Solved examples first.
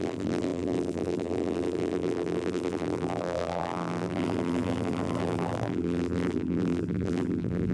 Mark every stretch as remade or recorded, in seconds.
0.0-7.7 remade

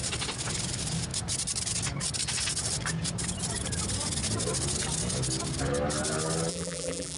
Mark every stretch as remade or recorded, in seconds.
0.0-6.5 recorded; 6.5-7.2 remade

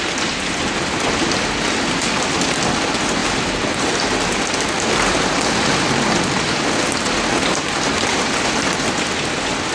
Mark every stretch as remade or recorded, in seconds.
0.0-3.2 recorded; 3.2-7.1 remade; 7.1-9.7 recorded

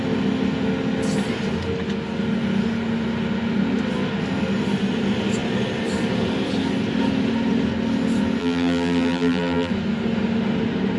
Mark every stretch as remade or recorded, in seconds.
0.0-8.4 recorded; 8.4-9.7 remade; 9.7-11.0 recorded

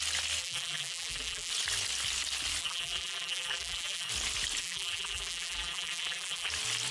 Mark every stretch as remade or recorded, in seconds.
0.0-0.4 recorded; 0.4-1.5 remade; 1.5-2.6 recorded; 2.6-4.1 remade; 4.1-4.6 recorded; 4.6-6.5 remade; 6.5-6.9 recorded

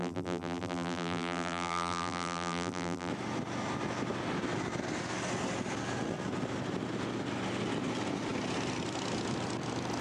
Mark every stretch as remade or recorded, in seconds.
0.0-3.1 remade; 3.1-10.0 recorded

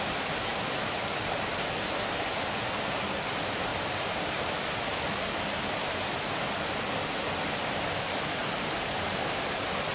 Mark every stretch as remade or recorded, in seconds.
0.0-0.5 recorded; 0.5-1.0 remade; 1.0-3.7 recorded; 3.7-4.4 remade; 4.4-8.4 recorded; 8.4-9.9 remade

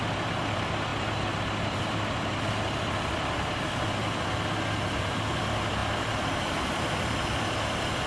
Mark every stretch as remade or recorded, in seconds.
0.0-8.1 remade